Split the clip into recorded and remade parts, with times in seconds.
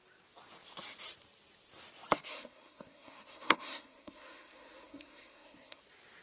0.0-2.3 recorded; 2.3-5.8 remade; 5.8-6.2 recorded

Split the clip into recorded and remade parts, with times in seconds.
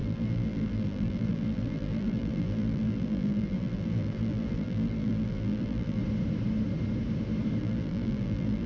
0.0-6.0 remade; 6.0-7.6 recorded; 7.6-8.7 remade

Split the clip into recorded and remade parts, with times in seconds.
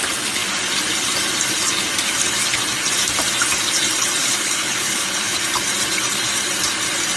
0.0-4.2 recorded; 4.2-5.4 remade; 5.4-7.2 recorded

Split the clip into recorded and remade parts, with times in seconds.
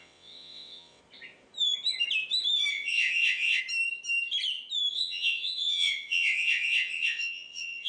0.0-1.0 remade; 1.0-2.7 recorded; 2.7-3.6 remade; 3.6-4.9 recorded; 4.9-7.9 remade